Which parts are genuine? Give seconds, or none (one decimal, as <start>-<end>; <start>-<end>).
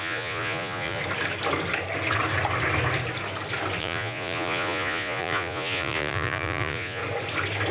1.0-3.8; 7.0-7.7